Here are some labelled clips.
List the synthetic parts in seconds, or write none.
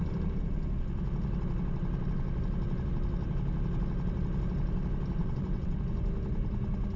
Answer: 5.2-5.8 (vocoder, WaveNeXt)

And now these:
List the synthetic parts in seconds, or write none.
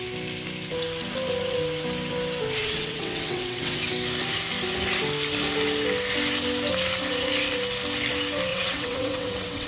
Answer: 2.6-3.8 (vocoder, WaveNeXt); 8.5-9.7